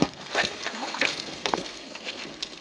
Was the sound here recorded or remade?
remade